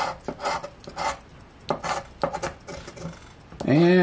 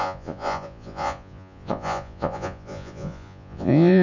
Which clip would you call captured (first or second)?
first